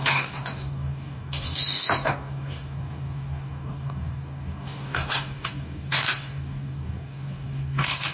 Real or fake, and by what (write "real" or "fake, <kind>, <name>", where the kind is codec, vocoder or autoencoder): fake, codec, DAC